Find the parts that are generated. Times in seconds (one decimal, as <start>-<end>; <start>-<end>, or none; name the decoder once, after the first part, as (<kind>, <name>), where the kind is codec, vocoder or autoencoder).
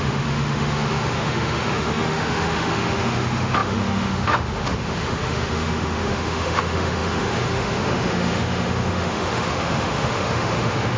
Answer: 0.0-11.0 (autoencoder, DAC-VAE)